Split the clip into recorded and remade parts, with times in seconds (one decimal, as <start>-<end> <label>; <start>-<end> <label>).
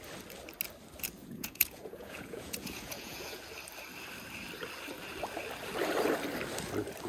0.0-1.2 recorded; 1.2-3.4 remade; 3.4-7.1 recorded